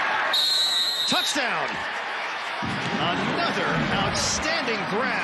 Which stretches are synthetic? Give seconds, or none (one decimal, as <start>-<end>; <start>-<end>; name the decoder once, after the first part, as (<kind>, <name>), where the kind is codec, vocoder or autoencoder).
0.4-1.0 (autoencoder, DAC-VAE); 1.8-3.0